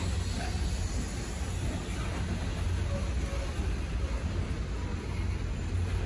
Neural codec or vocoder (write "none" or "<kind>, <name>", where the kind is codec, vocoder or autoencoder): none